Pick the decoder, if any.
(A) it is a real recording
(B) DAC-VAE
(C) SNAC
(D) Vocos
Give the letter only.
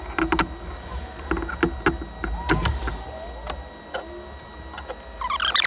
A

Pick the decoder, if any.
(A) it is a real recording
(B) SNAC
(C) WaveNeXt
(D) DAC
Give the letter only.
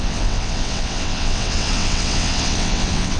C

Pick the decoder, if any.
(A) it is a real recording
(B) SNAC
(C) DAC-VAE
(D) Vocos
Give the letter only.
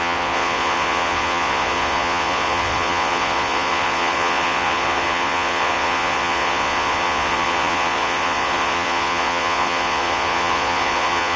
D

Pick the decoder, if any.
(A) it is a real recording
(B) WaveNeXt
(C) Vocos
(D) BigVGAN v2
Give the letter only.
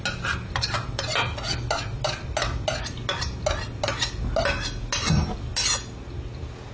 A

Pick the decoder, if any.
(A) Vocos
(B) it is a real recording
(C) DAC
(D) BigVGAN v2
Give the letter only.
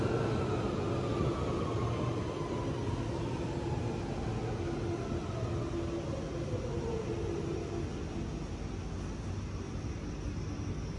B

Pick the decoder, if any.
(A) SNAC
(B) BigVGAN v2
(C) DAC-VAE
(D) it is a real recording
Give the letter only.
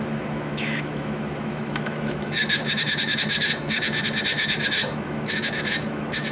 C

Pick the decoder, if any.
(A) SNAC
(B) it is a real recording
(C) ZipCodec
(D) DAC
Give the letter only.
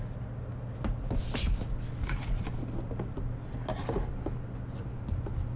B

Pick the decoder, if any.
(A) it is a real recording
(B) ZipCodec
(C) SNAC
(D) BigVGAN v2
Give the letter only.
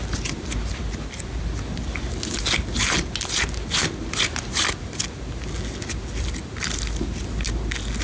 A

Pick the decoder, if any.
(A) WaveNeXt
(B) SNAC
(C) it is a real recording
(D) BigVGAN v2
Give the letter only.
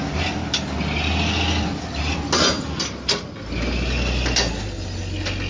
C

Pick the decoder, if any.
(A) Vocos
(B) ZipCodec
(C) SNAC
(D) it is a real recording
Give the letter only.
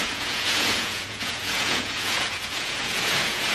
A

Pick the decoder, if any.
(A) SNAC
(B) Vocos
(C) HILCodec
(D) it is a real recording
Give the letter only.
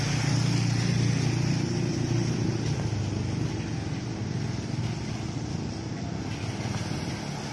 D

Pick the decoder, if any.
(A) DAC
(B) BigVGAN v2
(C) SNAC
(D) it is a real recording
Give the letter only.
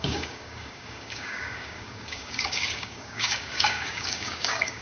A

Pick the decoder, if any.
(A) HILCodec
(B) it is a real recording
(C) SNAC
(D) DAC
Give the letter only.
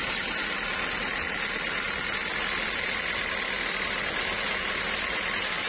B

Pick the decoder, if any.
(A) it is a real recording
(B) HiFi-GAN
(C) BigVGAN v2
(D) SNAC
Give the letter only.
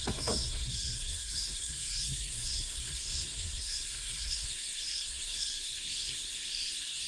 D